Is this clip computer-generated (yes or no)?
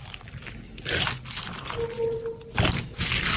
no